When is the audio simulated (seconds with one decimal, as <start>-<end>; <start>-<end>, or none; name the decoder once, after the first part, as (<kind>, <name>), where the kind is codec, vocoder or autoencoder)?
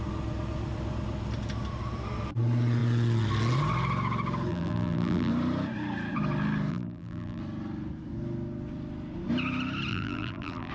4.5-5.3 (vocoder, BigVGAN v2); 6.7-7.4; 9.9-10.7